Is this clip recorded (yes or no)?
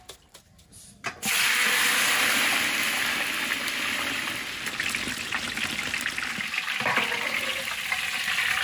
yes